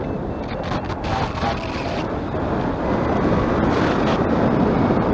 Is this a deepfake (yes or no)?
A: no